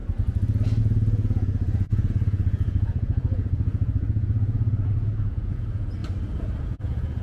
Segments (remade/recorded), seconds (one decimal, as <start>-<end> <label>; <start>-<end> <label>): 0.0-0.8 recorded; 0.8-6.0 remade; 6.0-6.6 recorded; 6.6-7.2 remade